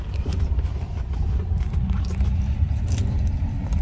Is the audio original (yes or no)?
yes